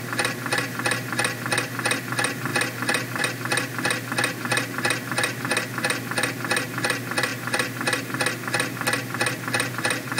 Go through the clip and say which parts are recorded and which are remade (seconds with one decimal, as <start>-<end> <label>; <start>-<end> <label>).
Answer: 0.0-10.2 recorded